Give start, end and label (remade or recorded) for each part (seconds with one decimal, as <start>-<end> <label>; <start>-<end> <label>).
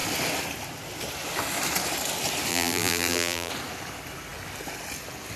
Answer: 0.0-2.5 recorded; 2.5-3.5 remade; 3.5-5.4 recorded